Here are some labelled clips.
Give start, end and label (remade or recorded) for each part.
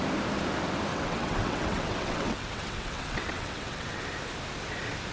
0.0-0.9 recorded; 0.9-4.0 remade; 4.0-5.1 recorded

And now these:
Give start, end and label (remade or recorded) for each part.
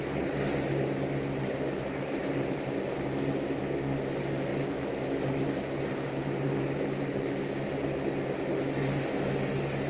0.0-9.9 recorded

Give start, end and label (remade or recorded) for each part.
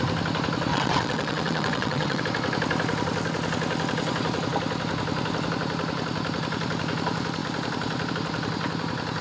0.0-0.7 recorded; 0.7-2.2 remade; 2.2-9.2 recorded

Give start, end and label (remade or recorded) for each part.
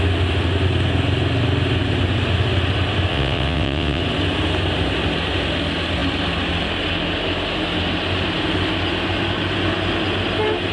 0.0-3.1 recorded; 3.1-4.0 remade; 4.0-10.7 recorded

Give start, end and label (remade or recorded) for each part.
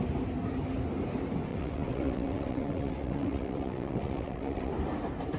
0.0-1.5 recorded; 1.5-4.7 remade; 4.7-5.4 recorded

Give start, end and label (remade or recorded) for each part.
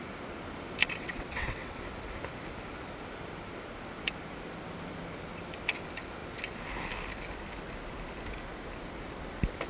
0.0-0.8 recorded; 0.8-1.8 remade; 1.8-9.7 recorded